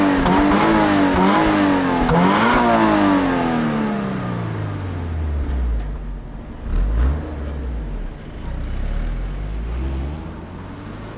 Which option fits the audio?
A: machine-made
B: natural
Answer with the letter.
B